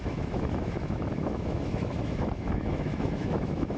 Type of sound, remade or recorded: remade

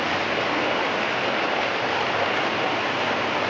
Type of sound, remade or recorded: recorded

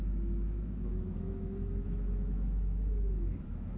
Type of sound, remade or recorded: remade